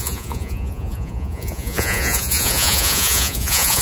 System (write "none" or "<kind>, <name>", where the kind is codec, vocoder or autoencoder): vocoder, Vocos